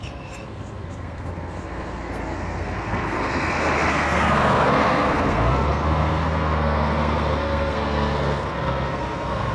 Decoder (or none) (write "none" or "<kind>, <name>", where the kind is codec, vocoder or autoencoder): codec, SNAC